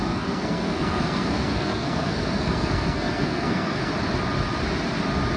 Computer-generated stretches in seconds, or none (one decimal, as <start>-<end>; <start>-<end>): 0.0-3.9